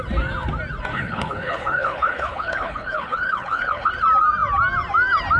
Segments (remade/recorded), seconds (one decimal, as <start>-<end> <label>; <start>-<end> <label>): 0.0-0.9 recorded; 0.9-3.9 remade; 3.9-5.4 recorded